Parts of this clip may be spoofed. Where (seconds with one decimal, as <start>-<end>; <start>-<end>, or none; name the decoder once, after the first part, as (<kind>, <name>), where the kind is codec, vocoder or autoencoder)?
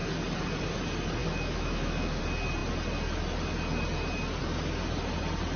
1.2-2.2 (autoencoder, DAC-VAE)